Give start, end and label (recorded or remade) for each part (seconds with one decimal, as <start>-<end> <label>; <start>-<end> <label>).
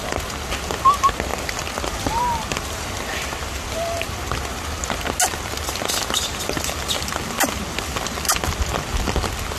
0.0-9.6 recorded